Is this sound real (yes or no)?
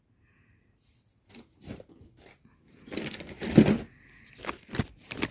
yes